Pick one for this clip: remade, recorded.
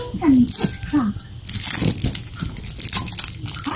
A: recorded